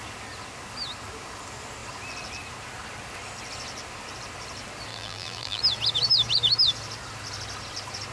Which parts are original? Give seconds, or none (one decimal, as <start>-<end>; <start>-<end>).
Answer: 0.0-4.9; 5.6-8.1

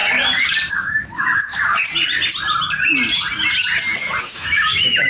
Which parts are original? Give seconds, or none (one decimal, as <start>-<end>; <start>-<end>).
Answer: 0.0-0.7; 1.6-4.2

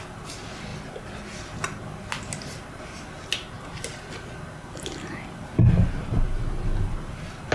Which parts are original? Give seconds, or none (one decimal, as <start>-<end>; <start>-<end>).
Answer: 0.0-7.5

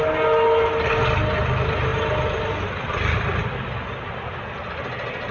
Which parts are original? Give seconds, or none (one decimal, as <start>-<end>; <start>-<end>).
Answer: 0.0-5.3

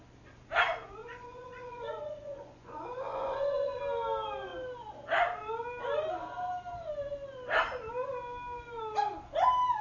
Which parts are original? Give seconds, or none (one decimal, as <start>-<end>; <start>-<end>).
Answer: 0.0-1.0; 3.8-9.8

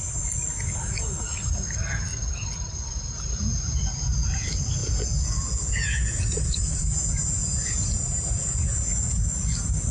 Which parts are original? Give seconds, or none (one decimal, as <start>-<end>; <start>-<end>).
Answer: 0.0-4.8; 9.2-9.9